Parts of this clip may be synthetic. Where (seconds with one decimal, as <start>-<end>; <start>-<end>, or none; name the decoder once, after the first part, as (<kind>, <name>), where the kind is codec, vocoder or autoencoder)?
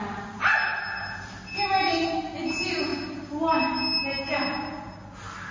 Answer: none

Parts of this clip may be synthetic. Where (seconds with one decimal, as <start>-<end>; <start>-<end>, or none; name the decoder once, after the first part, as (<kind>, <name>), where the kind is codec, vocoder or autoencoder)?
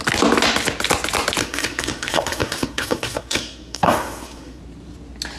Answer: 1.4-4.6 (codec, SNAC)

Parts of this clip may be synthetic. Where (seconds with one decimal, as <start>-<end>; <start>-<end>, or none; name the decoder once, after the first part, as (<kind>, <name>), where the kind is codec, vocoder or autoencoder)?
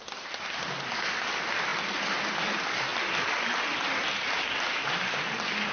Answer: none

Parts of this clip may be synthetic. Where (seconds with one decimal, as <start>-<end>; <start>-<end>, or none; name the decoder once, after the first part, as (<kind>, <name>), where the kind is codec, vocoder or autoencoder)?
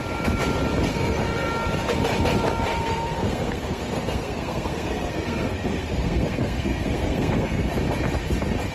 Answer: 0.9-1.5 (codec, SNAC); 2.7-7.7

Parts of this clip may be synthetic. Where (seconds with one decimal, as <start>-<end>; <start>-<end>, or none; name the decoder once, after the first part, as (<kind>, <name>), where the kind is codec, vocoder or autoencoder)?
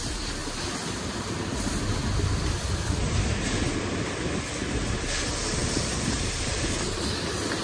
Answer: 5.6-7.1 (vocoder, BigVGAN v2)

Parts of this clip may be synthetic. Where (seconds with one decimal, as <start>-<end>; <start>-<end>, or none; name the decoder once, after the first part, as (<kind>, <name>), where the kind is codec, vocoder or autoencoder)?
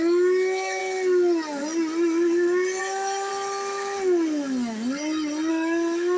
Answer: 0.0-0.8 (autoencoder, DAC-VAE); 2.8-3.3; 5.5-6.2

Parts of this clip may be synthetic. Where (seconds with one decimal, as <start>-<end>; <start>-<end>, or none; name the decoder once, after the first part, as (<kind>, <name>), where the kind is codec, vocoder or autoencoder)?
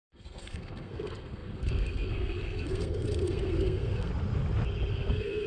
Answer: 0.0-4.1 (codec, SNAC); 4.9-5.5